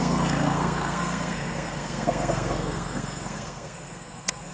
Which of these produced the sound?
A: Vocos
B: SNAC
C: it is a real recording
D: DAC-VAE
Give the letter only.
B